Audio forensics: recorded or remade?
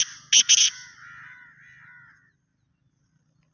recorded